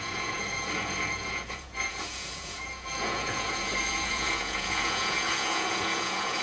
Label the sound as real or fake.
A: fake